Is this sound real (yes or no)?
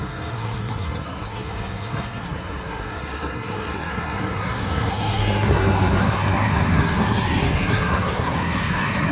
no